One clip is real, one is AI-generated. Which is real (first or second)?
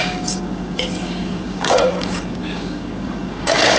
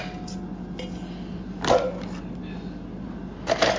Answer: second